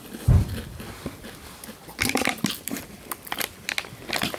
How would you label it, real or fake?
real